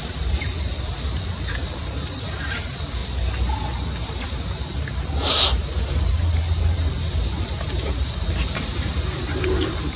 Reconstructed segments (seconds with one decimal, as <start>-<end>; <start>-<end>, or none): 0.0-3.0; 4.3-10.0